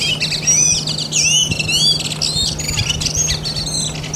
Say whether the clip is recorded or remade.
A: recorded